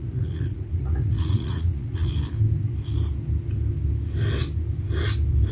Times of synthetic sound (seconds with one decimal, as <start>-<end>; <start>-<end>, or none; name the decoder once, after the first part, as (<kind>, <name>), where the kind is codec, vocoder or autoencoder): 0.0-2.1 (vocoder, Vocos)